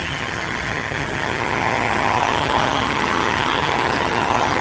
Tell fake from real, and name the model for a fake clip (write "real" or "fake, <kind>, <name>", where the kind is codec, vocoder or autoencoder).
fake, vocoder, HiFi-GAN